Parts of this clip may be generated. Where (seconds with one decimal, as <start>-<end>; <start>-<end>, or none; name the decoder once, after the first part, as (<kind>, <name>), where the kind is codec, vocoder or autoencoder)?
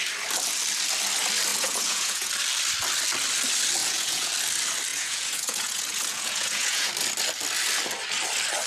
1.5-2.3 (vocoder, Vocos); 3.8-4.3; 4.9-6.9